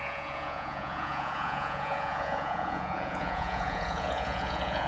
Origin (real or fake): fake